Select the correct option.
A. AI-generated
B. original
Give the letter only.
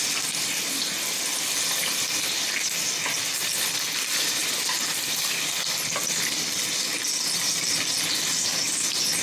B